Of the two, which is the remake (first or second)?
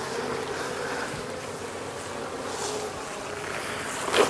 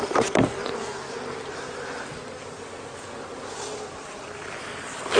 first